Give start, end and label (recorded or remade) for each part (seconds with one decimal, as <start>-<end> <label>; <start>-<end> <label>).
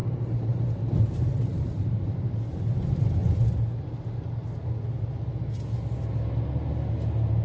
0.0-2.6 remade; 2.6-7.4 recorded